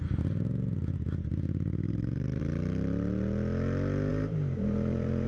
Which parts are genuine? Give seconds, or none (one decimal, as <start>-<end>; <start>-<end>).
0.0-1.7; 2.4-4.1